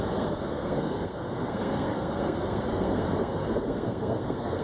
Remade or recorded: remade